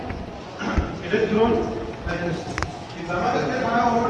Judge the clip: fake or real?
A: fake